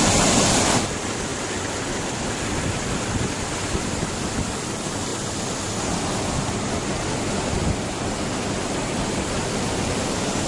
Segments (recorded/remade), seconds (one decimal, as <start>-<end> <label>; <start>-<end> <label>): 0.0-5.1 remade; 5.1-9.5 recorded; 9.5-10.5 remade